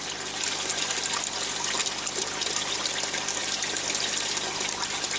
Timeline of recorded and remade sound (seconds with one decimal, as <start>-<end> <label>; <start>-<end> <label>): 0.0-5.2 recorded